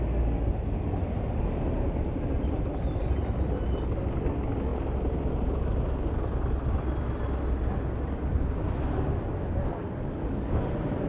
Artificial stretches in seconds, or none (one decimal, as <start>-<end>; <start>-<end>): 9.8-10.7

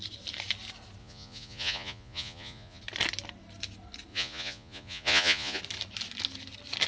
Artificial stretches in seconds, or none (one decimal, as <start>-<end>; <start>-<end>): 1.0-2.8; 4.1-5.6